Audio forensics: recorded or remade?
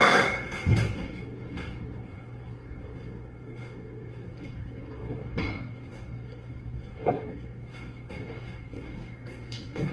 remade